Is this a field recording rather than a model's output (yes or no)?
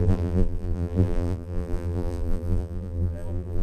no